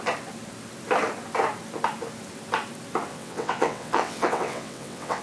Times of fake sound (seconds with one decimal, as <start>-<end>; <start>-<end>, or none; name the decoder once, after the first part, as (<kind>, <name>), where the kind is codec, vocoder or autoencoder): 3.1-5.2 (vocoder, WaveNeXt)